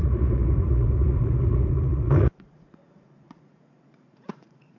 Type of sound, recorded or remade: remade